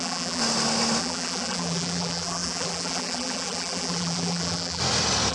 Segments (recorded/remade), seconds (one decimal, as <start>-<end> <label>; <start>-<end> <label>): 0.0-0.4 remade; 0.4-1.0 recorded; 1.0-4.8 remade; 4.8-5.3 recorded